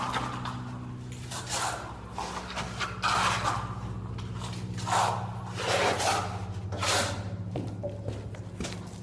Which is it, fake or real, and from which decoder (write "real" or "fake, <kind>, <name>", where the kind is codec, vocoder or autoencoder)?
real